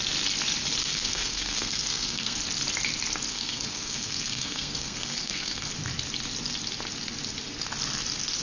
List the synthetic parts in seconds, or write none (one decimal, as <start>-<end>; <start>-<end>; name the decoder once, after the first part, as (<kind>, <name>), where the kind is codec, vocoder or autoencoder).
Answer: 0.8-2.4 (codec, SNAC); 3.3-5.7